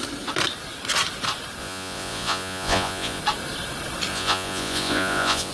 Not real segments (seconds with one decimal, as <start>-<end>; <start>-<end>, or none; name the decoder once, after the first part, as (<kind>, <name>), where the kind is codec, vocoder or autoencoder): 1.6-3.2 (vocoder, Vocos); 4.1-5.5